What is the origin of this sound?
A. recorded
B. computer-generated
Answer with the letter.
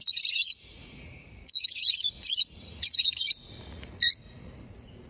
B